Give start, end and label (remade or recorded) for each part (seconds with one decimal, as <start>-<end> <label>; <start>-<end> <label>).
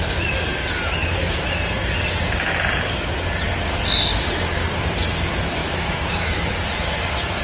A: 0.0-1.0 recorded; 1.0-1.6 remade; 1.6-5.6 recorded; 5.6-6.2 remade; 6.2-7.4 recorded